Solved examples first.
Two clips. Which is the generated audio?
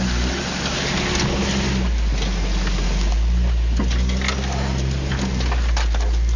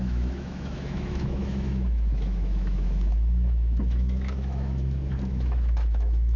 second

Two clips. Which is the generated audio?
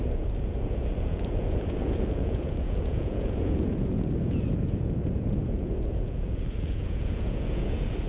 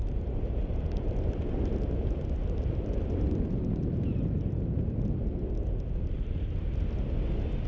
first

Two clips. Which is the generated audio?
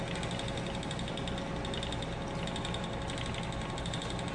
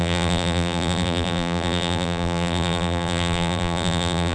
second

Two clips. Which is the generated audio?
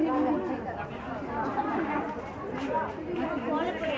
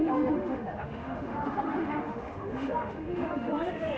second